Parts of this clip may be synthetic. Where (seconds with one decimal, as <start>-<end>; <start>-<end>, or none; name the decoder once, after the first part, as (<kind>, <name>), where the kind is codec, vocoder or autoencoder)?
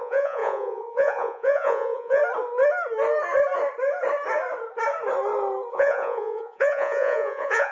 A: 0.0-2.2 (vocoder, Vocos); 5.7-7.7